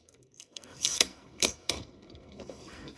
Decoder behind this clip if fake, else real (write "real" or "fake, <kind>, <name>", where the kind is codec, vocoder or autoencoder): fake, codec, SNAC